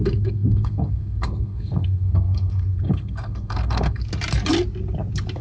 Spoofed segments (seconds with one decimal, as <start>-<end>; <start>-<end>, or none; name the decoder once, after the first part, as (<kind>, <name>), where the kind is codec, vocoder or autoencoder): 0.0-4.0 (codec, SNAC)